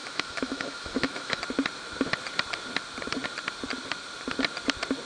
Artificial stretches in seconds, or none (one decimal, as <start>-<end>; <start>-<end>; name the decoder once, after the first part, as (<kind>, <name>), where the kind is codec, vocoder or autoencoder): 0.0-1.4 (autoencoder, DAC-VAE)